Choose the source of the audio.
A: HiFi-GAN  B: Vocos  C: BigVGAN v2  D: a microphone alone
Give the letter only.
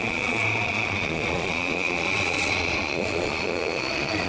B